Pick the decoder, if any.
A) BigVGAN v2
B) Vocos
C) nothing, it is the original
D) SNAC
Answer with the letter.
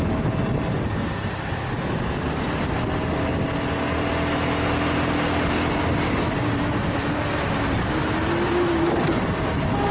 C